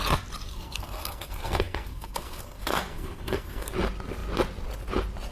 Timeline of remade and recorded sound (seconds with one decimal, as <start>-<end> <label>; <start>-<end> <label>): 0.0-0.5 recorded; 0.5-3.7 remade; 3.7-5.3 recorded